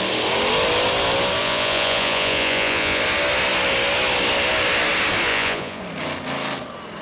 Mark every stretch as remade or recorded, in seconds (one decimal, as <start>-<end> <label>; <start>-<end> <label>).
0.0-1.4 recorded; 1.4-3.0 remade; 3.0-5.3 recorded; 5.3-5.8 remade; 5.8-7.0 recorded